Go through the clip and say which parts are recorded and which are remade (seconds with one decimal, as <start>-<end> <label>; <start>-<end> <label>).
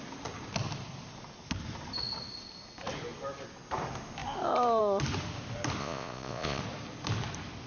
0.0-5.8 recorded; 5.8-6.6 remade; 6.6-7.7 recorded